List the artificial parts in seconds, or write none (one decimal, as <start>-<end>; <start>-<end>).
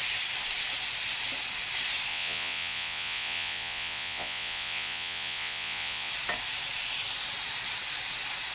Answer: 2.1-6.1